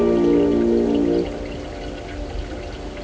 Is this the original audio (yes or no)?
yes